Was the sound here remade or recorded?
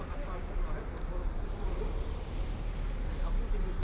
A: recorded